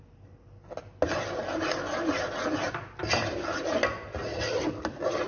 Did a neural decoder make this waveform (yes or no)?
no